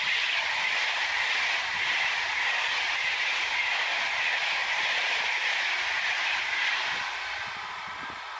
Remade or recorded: recorded